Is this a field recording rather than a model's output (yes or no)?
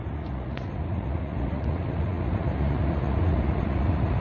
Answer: no